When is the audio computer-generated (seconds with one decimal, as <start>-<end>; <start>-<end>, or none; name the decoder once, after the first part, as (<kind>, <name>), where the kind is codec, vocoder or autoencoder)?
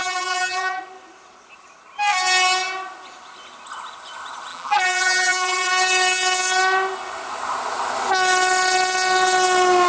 0.0-0.8 (vocoder, BigVGAN v2); 4.5-5.7